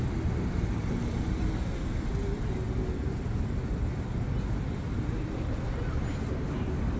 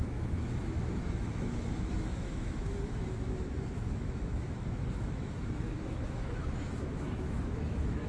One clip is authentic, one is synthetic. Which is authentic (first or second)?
first